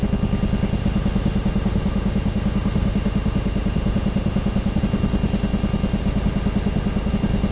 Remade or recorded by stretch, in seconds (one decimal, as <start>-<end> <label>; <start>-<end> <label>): 0.0-0.8 recorded; 0.8-4.8 remade; 4.8-6.0 recorded; 6.0-7.1 remade; 7.1-7.5 recorded